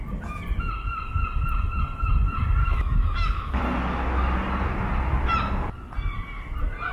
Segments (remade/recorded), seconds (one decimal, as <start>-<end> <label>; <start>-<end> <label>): 0.0-2.6 recorded; 2.6-3.6 remade; 3.6-6.9 recorded